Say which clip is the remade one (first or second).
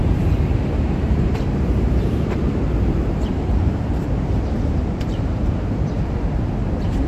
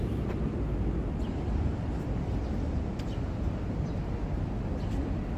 first